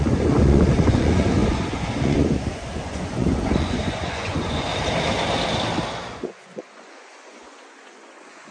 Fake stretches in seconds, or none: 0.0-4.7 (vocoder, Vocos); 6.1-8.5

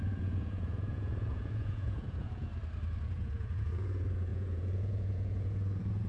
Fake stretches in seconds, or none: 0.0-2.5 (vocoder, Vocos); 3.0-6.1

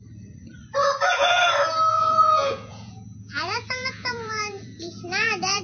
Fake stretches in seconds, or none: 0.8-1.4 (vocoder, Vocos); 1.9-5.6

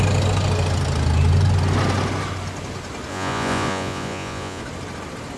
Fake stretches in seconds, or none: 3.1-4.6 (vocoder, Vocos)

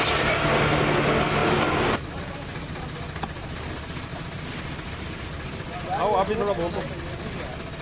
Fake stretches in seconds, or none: none

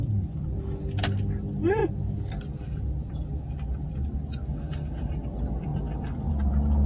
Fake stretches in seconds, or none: none

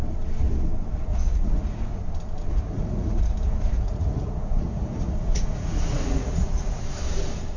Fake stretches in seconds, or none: 1.1-2.0 (vocoder, Vocos); 2.5-6.8

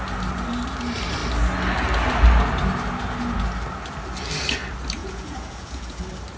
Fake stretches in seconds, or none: 5.0-6.0 (vocoder, Vocos)